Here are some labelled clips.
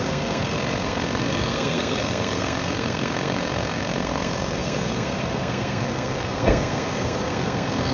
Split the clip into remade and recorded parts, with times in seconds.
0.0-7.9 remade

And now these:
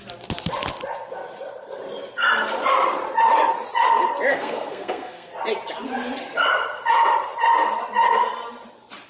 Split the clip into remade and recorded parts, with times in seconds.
0.0-4.3 recorded; 4.3-5.3 remade; 5.3-9.1 recorded

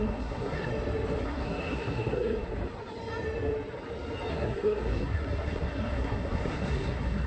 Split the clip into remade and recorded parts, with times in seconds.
0.0-0.7 remade; 0.7-1.2 recorded; 1.2-2.5 remade; 2.5-4.3 recorded; 4.3-7.3 remade

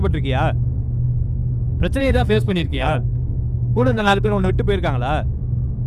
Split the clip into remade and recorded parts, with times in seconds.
0.0-0.8 recorded; 0.8-1.5 remade; 1.5-2.0 recorded; 2.0-4.5 remade; 4.5-5.9 recorded

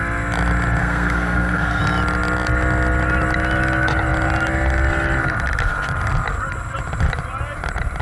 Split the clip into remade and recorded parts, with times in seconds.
0.0-0.8 recorded; 0.8-1.8 remade; 1.8-8.0 recorded

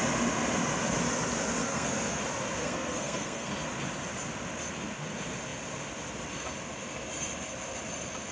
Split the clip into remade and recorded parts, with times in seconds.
0.0-1.6 recorded; 1.6-2.2 remade; 2.2-2.6 recorded; 2.6-3.5 remade; 3.5-8.3 recorded

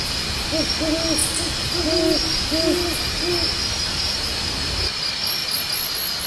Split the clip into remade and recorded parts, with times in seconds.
0.0-6.3 recorded